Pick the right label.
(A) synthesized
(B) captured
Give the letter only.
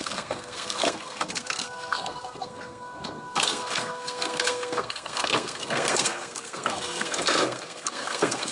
A